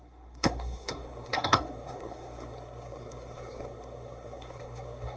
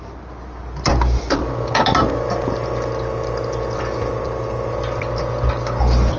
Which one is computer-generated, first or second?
first